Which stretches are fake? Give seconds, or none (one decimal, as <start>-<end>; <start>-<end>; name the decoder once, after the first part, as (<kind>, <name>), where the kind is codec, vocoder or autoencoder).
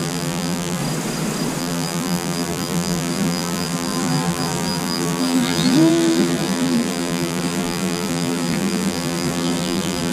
0.0-0.8 (vocoder, BigVGAN v2); 1.6-10.1